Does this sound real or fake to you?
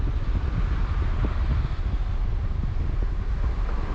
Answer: real